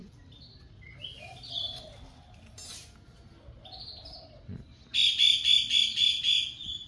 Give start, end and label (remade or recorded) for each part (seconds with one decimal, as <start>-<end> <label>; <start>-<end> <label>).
0.0-6.9 recorded